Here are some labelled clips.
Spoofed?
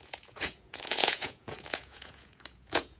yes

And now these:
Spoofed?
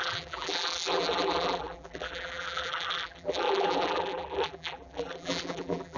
yes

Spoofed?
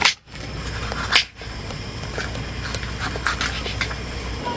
no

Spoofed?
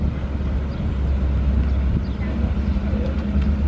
no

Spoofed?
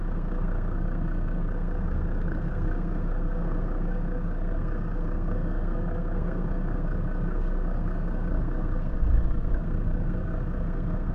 yes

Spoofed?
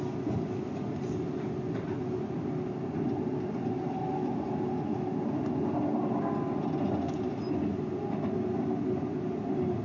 no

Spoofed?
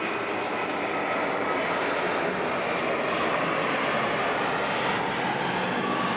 no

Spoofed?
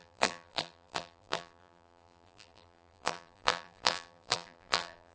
yes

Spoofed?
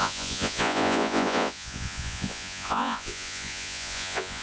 yes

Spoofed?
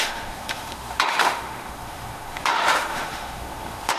yes